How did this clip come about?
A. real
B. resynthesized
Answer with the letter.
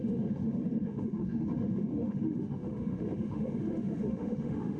B